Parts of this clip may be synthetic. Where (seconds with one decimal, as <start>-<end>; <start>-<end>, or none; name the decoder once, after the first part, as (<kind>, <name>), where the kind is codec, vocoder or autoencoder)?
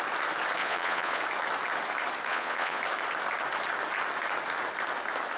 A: 0.6-1.2 (vocoder, Vocos); 2.3-2.8